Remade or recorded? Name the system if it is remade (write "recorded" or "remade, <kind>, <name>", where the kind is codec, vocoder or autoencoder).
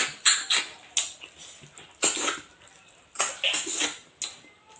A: recorded